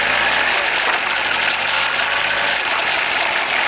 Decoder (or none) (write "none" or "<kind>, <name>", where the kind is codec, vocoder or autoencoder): none